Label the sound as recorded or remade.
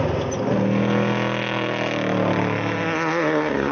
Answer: recorded